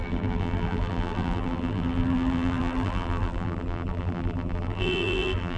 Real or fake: fake